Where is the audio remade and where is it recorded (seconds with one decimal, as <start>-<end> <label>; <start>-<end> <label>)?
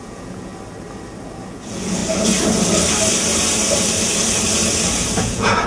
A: 0.0-0.5 remade; 0.5-1.5 recorded; 1.5-2.0 remade; 2.0-5.2 recorded; 5.2-5.7 remade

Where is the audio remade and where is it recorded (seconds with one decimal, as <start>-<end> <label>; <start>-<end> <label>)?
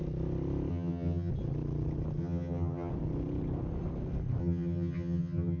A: 0.0-0.7 recorded; 0.7-1.3 remade; 1.3-2.2 recorded; 2.2-2.9 remade; 2.9-4.4 recorded; 4.4-5.6 remade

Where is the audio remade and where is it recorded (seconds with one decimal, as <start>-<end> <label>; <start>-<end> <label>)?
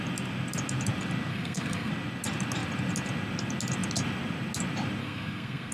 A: 0.0-1.3 recorded; 1.3-1.9 remade; 1.9-5.0 recorded; 5.0-5.7 remade